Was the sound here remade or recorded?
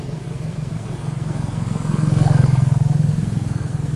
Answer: remade